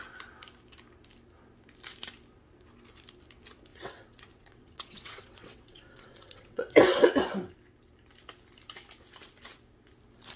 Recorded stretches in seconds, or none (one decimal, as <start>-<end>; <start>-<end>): 0.0-3.7; 7.5-10.4